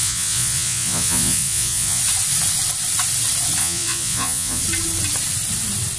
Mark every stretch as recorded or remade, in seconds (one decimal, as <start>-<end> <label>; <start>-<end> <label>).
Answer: 0.0-2.0 remade; 2.0-3.6 recorded; 3.6-4.6 remade; 4.6-6.0 recorded